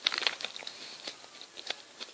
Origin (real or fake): real